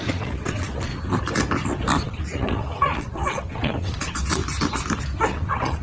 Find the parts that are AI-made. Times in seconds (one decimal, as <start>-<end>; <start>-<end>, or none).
0.0-0.9; 2.0-4.4; 5.3-5.8